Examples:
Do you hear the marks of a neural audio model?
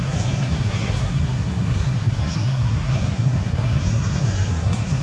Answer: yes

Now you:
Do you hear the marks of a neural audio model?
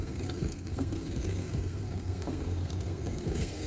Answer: yes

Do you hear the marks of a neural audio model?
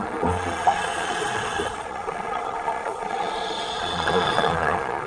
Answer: yes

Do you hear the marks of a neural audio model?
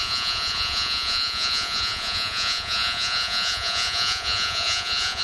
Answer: yes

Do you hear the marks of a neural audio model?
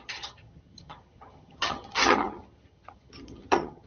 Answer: yes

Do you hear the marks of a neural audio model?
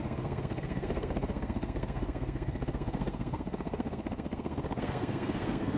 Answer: yes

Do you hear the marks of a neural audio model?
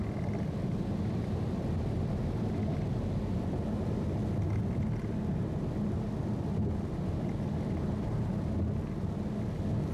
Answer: no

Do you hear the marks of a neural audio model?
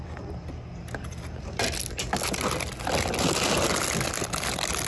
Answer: no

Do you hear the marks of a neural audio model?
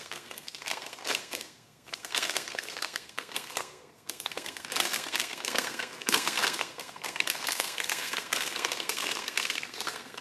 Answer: yes